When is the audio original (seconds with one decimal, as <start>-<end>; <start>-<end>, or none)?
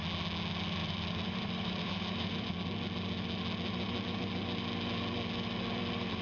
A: 0.0-0.8; 2.5-6.2